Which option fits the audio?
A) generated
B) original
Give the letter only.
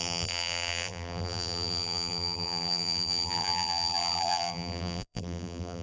A